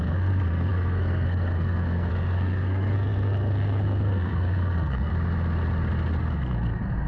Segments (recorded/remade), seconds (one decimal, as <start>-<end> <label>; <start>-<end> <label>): 0.0-5.1 remade; 5.1-6.2 recorded; 6.2-7.1 remade